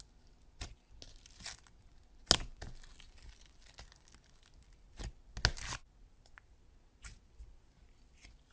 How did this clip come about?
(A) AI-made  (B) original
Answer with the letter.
B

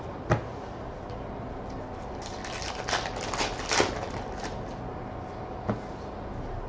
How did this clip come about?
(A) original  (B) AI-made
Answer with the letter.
A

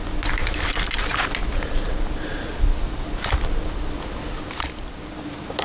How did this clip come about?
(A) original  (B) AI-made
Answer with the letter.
A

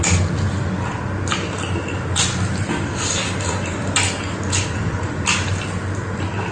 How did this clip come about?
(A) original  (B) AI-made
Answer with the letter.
A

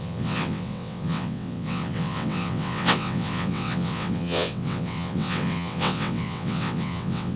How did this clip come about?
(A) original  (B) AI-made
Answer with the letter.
B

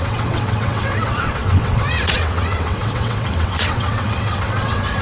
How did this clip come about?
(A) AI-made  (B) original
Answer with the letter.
A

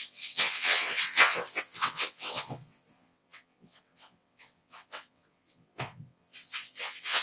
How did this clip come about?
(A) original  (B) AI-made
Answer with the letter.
B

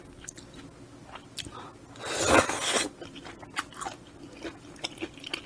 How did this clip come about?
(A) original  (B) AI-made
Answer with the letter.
A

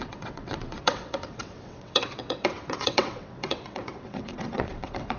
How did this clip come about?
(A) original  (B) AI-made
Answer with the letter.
B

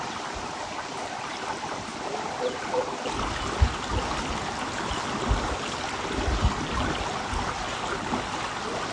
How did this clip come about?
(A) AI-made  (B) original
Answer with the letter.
B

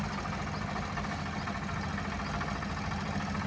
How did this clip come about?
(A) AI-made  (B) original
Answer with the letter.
B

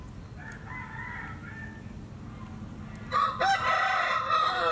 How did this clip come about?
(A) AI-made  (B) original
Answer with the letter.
B